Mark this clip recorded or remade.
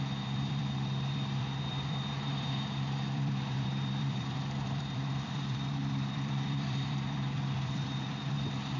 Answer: remade